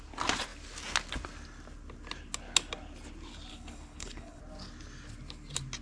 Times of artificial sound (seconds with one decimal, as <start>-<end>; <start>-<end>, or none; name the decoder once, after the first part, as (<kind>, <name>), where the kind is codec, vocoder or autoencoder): 3.5-4.4 (codec, HILCodec)